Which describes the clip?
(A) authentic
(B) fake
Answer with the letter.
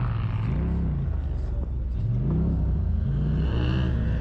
A